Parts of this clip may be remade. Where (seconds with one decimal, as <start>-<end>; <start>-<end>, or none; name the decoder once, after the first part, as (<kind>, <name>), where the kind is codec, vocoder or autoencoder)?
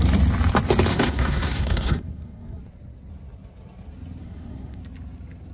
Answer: 0.9-2.6 (codec, SNAC); 4.2-4.8